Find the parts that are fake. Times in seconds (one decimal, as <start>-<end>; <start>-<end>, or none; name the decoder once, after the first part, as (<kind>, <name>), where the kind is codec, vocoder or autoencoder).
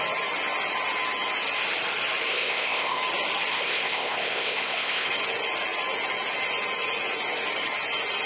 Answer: 2.3-3.0 (codec, ZipCodec); 3.5-5.1